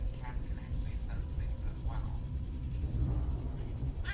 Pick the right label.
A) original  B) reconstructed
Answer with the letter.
A